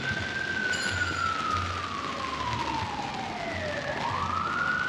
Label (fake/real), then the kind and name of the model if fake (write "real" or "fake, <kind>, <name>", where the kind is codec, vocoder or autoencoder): real